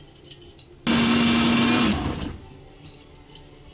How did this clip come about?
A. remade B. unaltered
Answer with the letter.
B